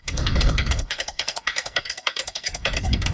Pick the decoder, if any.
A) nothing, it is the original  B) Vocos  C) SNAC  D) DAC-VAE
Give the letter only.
C